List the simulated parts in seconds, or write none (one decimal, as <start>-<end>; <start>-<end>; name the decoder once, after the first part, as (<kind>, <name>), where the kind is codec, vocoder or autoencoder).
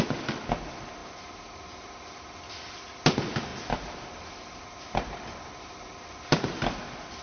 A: 1.0-1.9 (vocoder, BigVGAN v2); 3.5-6.8